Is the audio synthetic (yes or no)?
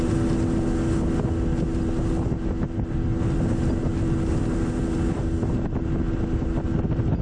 no